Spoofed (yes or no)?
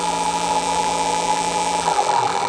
yes